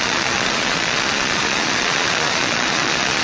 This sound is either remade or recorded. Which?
remade